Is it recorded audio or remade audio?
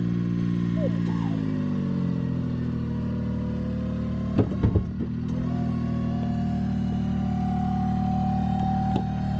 recorded